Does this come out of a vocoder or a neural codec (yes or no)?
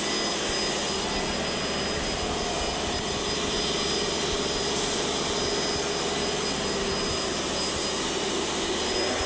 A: no